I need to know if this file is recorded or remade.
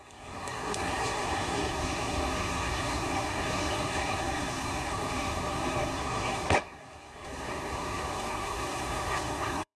remade